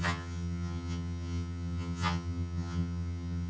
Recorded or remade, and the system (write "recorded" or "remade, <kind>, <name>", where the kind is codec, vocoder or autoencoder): remade, vocoder, HiFi-GAN